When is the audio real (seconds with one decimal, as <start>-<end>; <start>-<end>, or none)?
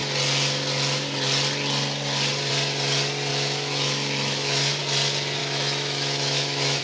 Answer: 0.0-3.3; 4.8-5.4